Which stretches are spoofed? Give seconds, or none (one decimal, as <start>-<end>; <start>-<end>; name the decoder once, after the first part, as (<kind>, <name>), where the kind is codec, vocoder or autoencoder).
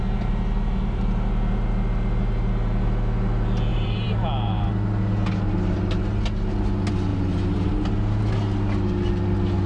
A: 3.7-4.7 (vocoder, BigVGAN v2); 7.1-7.7